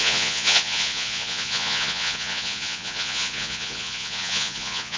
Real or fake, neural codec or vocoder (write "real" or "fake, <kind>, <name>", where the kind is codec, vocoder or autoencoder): fake, vocoder, Vocos